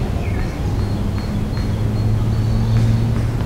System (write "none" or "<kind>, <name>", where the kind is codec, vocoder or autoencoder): none